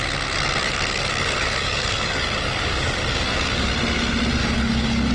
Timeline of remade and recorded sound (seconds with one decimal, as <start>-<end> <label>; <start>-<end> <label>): 0.0-0.6 recorded; 0.6-3.7 remade; 3.7-4.4 recorded; 4.4-5.1 remade